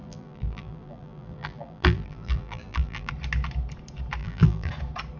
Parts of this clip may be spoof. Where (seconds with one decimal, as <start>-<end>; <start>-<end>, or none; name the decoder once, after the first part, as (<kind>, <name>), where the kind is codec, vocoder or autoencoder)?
0.0-3.1 (vocoder, BigVGAN v2); 4.2-4.7